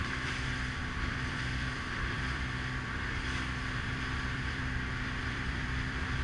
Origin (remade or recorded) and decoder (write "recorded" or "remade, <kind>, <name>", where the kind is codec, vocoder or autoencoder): remade, vocoder, BigVGAN v2